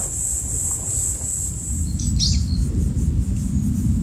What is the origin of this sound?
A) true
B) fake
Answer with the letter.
A